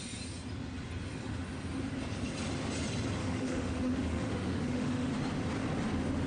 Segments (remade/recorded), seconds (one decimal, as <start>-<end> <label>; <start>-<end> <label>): 0.0-3.2 recorded; 3.2-5.1 remade; 5.1-6.3 recorded